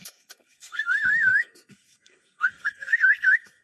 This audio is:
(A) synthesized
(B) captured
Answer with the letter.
A